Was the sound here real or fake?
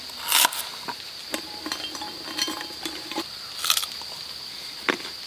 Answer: real